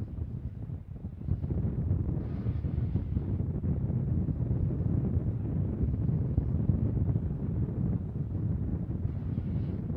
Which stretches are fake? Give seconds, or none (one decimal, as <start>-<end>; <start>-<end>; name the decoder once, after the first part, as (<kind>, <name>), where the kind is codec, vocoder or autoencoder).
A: 1.1-2.4 (vocoder, BigVGAN v2)